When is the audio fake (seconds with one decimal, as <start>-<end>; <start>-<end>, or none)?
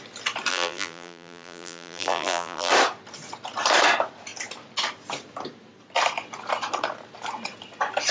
0.5-2.7